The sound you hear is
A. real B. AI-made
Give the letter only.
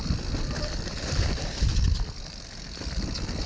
A